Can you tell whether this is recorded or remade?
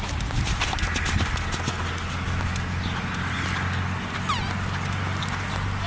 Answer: recorded